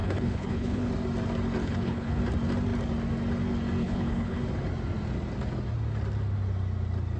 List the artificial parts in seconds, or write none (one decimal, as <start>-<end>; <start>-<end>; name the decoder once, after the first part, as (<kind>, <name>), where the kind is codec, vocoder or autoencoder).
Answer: 0.0-0.9 (codec, HILCodec); 1.6-2.2; 3.8-4.4